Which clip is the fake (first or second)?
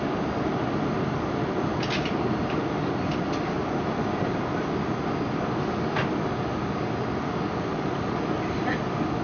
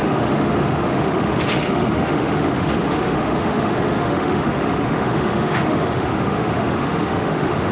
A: second